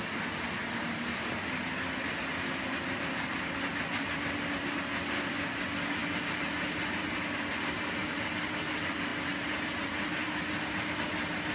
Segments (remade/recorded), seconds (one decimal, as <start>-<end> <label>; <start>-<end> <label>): 0.0-11.5 recorded